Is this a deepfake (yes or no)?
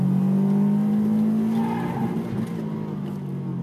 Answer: no